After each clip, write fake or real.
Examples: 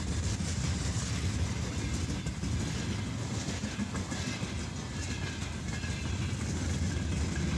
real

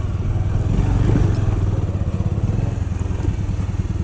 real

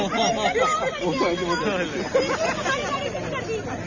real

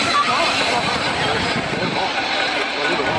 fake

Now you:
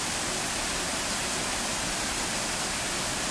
real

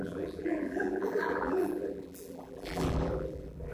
fake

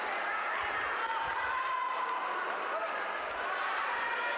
real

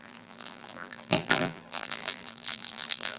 fake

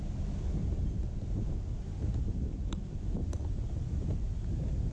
real